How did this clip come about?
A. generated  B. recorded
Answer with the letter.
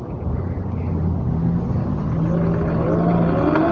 B